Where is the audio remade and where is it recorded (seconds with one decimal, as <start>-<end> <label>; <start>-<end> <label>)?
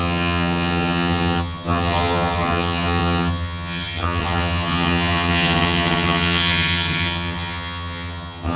0.0-8.6 remade